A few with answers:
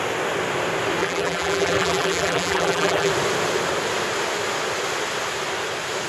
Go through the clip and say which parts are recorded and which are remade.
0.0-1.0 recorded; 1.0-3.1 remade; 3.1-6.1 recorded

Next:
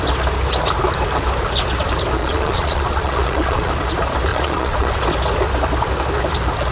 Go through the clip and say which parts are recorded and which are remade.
0.0-2.2 recorded; 2.2-3.7 remade; 3.7-4.3 recorded; 4.3-4.9 remade; 4.9-6.7 recorded

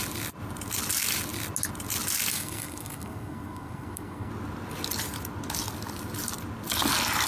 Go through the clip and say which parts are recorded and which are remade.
0.0-2.3 recorded; 2.3-4.3 remade; 4.3-7.3 recorded